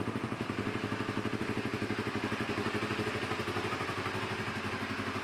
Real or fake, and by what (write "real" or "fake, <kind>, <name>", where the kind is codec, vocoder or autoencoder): real